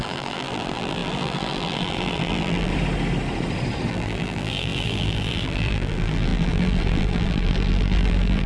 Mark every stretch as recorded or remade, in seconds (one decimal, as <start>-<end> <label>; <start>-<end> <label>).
0.0-2.7 remade; 2.7-3.9 recorded; 3.9-8.5 remade